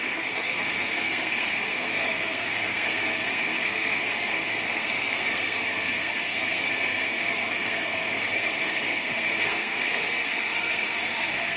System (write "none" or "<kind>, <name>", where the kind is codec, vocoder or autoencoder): codec, SNAC